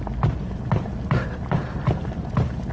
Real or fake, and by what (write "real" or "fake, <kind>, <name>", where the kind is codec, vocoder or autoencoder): real